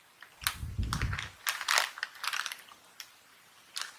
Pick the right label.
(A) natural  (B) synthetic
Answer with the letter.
A